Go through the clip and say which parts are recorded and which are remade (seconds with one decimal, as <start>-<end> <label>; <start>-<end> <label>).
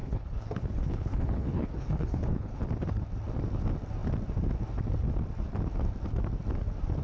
0.0-2.6 remade; 2.6-7.0 recorded